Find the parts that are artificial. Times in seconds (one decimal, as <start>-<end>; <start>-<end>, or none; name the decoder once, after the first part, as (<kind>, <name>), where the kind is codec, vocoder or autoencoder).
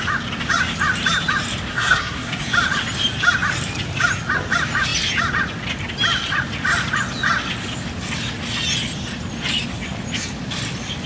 1.7-2.4 (codec, SNAC)